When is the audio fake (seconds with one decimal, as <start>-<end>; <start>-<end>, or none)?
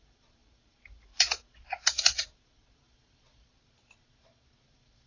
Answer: 0.0-5.1